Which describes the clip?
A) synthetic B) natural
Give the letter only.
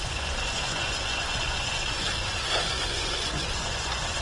A